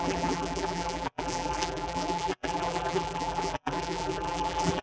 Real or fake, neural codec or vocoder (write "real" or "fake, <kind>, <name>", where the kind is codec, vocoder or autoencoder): fake, vocoder, BigVGAN v2